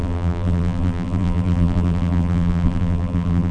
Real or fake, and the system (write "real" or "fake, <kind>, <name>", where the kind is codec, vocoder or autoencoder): fake, vocoder, BigVGAN v2